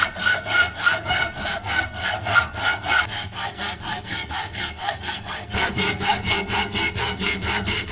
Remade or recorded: remade